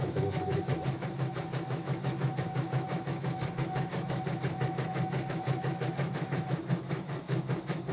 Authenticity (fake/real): fake